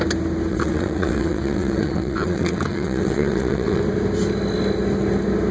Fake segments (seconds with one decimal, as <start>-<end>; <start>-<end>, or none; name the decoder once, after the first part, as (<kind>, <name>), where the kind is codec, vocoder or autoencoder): 0.5-3.8 (vocoder, WaveNeXt)